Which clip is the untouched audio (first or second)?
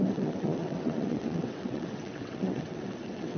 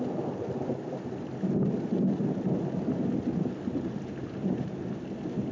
second